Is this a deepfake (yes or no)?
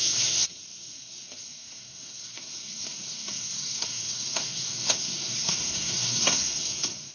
yes